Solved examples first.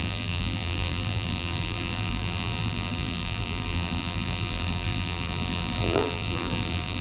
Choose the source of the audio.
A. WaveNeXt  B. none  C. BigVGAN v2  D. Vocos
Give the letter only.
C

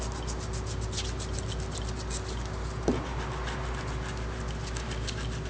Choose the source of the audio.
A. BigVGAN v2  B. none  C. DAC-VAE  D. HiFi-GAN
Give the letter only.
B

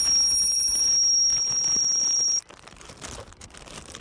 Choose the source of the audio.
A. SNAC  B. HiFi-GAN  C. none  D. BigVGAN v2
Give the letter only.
C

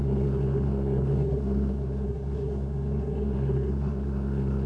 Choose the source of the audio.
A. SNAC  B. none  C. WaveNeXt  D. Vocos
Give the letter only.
A